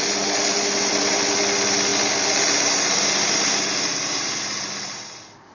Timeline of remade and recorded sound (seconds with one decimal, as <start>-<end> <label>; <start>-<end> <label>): 0.0-5.5 recorded